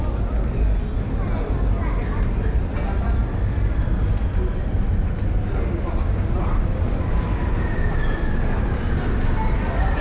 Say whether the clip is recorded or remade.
recorded